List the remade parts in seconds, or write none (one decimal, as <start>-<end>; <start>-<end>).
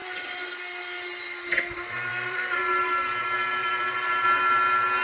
2.1-2.6; 3.6-4.1